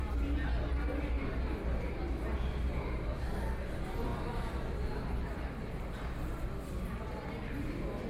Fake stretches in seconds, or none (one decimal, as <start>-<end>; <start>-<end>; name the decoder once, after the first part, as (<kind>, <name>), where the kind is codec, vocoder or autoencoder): 4.1-5.9 (vocoder, BigVGAN v2)